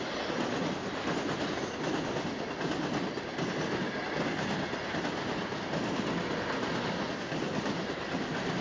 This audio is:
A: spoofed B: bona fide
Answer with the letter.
B